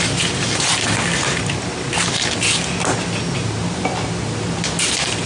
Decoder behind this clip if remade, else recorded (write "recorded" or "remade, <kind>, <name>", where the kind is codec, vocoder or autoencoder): recorded